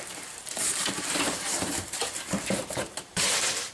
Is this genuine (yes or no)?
no